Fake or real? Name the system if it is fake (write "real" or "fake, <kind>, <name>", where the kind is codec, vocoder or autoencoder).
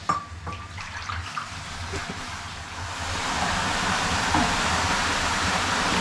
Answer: real